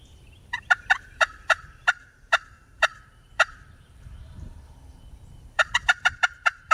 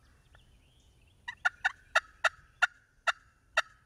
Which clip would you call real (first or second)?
second